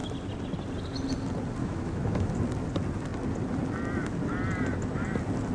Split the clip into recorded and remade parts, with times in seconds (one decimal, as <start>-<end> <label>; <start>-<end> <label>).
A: 0.0-1.6 recorded; 1.6-2.3 remade; 2.3-5.5 recorded